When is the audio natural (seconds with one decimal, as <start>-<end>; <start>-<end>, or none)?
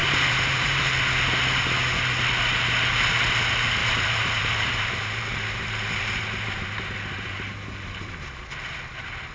0.9-3.8; 8.1-9.3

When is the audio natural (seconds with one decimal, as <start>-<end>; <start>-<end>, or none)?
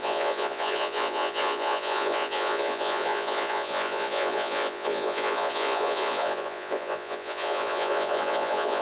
none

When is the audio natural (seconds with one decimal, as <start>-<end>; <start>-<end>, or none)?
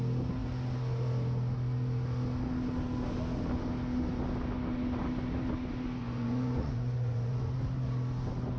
0.0-6.0; 7.4-8.6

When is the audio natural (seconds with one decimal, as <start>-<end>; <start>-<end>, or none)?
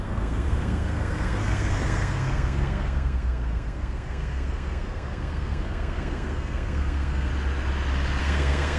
7.3-8.2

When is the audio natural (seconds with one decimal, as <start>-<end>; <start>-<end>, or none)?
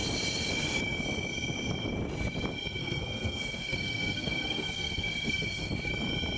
0.0-2.8; 5.7-6.4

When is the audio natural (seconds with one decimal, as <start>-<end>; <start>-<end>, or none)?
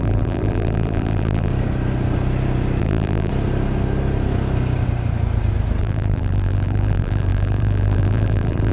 1.5-2.8; 3.3-5.8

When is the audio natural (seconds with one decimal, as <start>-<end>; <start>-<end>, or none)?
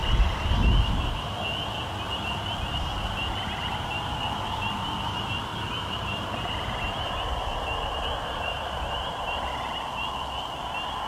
0.0-5.5; 9.5-11.1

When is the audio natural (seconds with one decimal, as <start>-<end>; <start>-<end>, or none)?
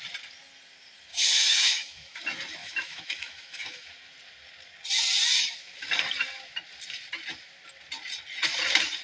0.0-1.1; 2.2-2.6; 3.9-9.0